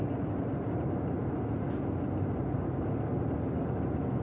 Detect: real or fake real